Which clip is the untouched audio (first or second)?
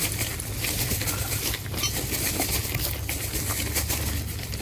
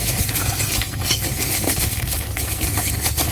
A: first